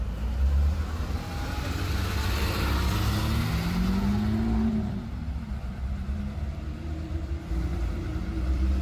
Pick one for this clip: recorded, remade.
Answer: recorded